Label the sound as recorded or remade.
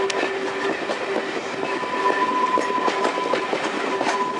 recorded